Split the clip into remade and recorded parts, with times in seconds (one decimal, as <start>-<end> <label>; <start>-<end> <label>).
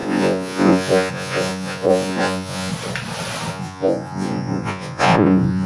0.0-2.7 remade; 2.7-3.5 recorded; 3.5-5.7 remade